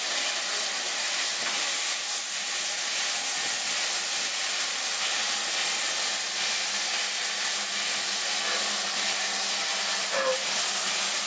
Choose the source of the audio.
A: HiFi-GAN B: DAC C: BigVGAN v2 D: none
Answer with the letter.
D